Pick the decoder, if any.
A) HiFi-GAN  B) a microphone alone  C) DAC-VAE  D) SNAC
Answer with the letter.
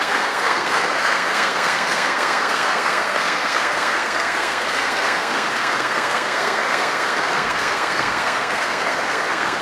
D